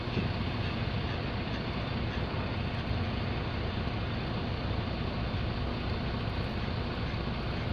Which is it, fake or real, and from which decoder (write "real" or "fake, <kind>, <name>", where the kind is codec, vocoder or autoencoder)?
real